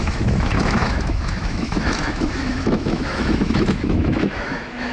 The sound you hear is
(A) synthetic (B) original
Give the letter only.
A